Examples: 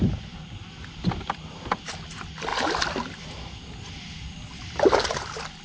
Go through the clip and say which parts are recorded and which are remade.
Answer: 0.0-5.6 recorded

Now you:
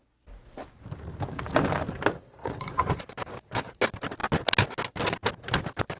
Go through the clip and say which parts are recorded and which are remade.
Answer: 0.0-2.4 recorded; 2.4-3.0 remade; 3.0-6.0 recorded

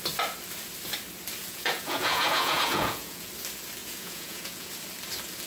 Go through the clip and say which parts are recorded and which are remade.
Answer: 0.0-1.4 recorded; 1.4-3.3 remade; 3.3-3.8 recorded; 3.8-4.7 remade; 4.7-5.5 recorded

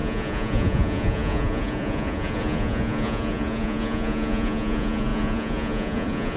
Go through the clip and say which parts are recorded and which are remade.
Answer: 0.0-6.4 remade